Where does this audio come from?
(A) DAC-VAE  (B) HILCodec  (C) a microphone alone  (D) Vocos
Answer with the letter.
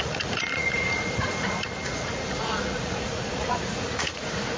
D